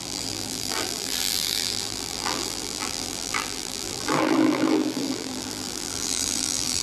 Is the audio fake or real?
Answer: fake